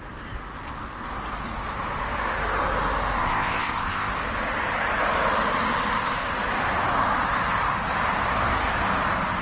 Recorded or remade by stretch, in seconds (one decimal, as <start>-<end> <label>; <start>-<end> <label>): 0.0-3.2 recorded; 3.2-4.1 remade; 4.1-9.4 recorded